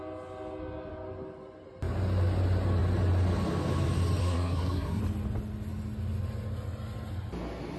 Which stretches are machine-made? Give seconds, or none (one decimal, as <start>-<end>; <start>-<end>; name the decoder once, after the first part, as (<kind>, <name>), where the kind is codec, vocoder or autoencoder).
4.2-5.0 (codec, SNAC)